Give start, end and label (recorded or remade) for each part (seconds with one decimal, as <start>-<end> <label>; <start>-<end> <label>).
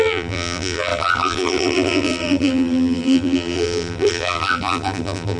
0.0-5.4 remade